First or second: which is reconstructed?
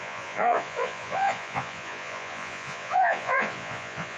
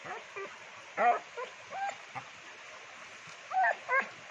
first